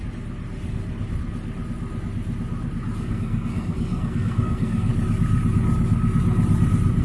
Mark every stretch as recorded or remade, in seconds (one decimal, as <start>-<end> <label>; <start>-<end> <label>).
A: 0.0-3.0 recorded; 3.0-4.9 remade; 4.9-7.0 recorded